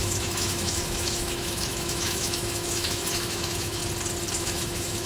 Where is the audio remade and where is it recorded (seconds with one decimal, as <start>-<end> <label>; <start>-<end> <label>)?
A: 0.0-3.8 remade; 3.8-4.3 recorded; 4.3-5.1 remade